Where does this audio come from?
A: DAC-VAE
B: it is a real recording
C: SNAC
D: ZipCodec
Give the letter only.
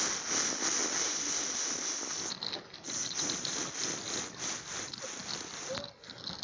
B